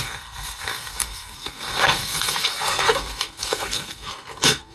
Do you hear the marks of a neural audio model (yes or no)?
yes